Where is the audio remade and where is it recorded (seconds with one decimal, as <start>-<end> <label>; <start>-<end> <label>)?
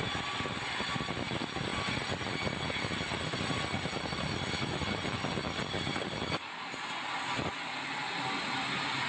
0.0-9.1 recorded